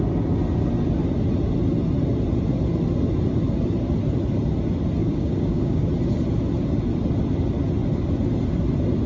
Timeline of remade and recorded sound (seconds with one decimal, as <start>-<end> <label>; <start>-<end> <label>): 0.0-5.0 recorded; 5.0-5.9 remade; 5.9-9.1 recorded